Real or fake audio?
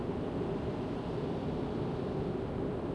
real